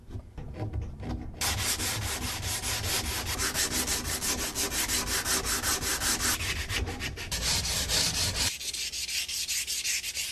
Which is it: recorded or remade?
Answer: recorded